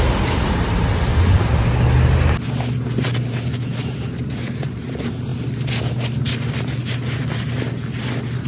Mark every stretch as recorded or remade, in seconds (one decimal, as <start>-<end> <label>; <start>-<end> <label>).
0.0-8.5 recorded

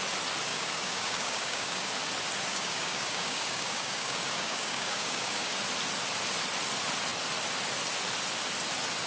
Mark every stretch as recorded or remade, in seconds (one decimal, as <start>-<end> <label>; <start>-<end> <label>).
0.0-0.5 recorded; 0.5-1.9 remade; 1.9-2.5 recorded; 2.5-5.6 remade; 5.6-9.1 recorded

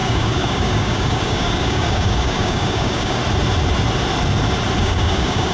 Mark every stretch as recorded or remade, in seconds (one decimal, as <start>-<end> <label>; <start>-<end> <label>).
0.0-3.2 remade; 3.2-4.8 recorded; 4.8-5.5 remade